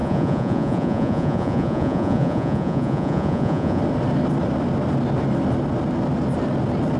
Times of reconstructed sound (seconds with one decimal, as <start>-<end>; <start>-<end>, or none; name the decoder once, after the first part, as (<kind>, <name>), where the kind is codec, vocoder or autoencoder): 0.0-3.8 (vocoder, Vocos)